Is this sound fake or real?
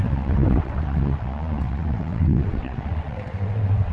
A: fake